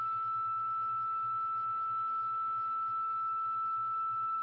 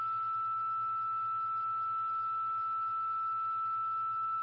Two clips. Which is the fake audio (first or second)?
first